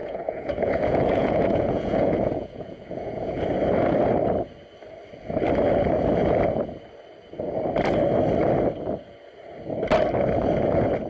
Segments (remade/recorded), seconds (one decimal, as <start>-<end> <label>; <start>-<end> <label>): 0.0-3.4 remade; 3.4-11.1 recorded